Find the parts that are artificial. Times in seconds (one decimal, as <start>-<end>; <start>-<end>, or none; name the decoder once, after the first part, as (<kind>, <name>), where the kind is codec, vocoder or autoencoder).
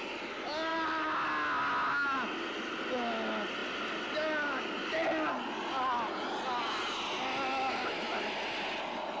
none